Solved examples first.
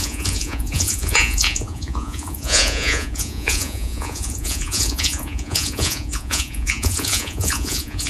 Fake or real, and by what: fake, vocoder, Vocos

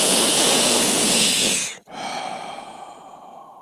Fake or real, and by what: fake, vocoder, Vocos